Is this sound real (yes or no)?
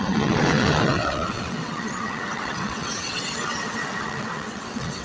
no